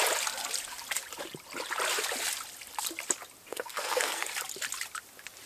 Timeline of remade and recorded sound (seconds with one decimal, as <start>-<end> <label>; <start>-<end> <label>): 0.0-3.5 recorded; 3.5-4.3 remade; 4.3-5.5 recorded